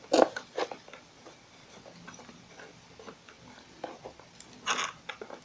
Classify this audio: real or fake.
real